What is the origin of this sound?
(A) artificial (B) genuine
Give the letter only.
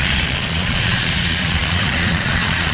A